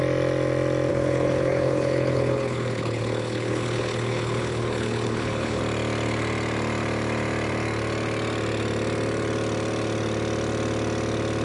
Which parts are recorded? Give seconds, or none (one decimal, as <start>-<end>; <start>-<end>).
0.0-0.9; 5.6-11.4